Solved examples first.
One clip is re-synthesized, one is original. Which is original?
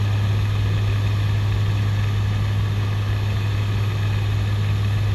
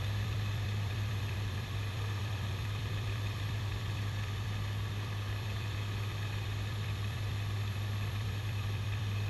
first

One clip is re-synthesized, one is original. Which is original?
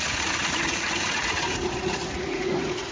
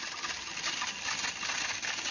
second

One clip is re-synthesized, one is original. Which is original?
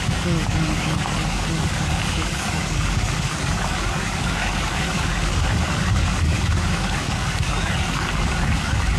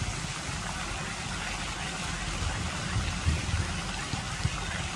second